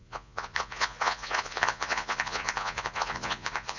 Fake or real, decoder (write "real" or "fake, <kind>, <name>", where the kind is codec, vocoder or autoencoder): fake, vocoder, Vocos